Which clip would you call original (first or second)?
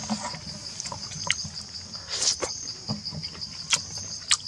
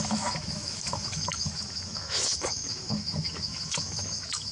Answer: first